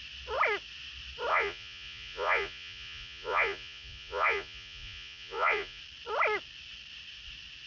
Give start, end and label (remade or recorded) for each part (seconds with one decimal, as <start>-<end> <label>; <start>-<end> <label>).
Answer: 0.0-1.3 recorded; 1.3-5.8 remade; 5.8-7.7 recorded